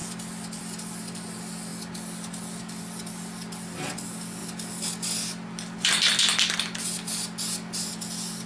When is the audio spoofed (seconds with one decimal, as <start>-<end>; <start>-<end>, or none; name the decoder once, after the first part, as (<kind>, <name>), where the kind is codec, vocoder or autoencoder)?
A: none